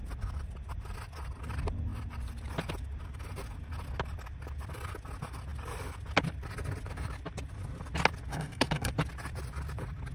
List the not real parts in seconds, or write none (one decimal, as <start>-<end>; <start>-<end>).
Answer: 8.3-8.9